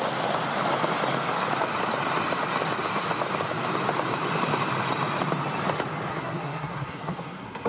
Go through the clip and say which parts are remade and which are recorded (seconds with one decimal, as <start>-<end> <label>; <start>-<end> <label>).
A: 0.0-6.1 recorded; 6.1-7.7 remade